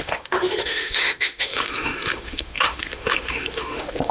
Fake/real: fake